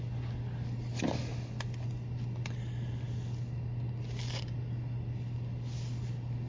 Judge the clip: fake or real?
real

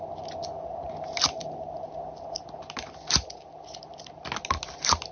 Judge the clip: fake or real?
real